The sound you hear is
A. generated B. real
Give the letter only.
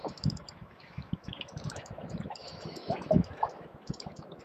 A